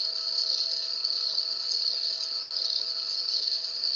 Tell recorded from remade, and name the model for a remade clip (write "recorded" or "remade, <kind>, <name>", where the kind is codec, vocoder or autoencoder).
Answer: recorded